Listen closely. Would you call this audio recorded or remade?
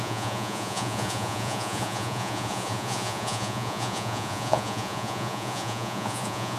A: remade